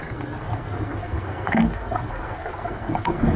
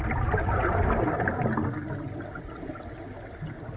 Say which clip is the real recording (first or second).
second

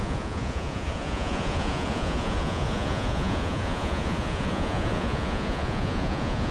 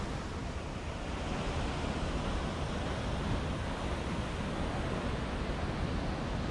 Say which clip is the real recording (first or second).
second